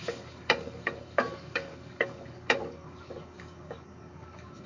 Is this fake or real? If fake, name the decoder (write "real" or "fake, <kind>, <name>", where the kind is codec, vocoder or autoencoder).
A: fake, codec, DAC